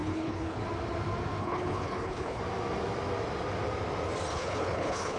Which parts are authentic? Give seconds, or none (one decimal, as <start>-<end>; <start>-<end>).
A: 0.6-1.4; 2.4-4.3